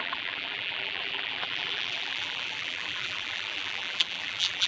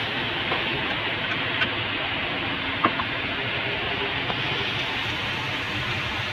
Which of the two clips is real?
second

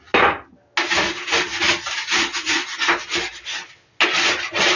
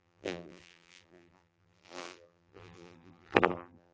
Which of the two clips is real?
first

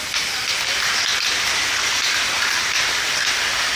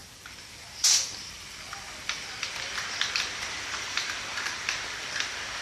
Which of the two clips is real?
first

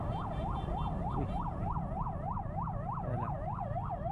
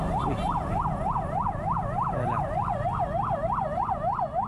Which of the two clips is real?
second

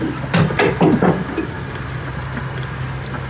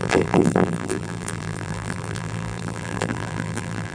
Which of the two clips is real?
first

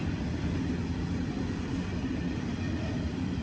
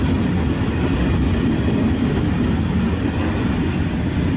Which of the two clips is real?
second